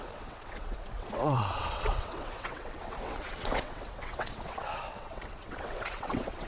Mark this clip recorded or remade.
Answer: remade